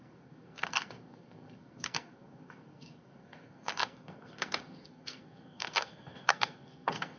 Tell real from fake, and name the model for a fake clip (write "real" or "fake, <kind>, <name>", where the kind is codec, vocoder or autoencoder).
fake, codec, SNAC